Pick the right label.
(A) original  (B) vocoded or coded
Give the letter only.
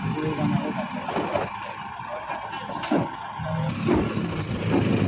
A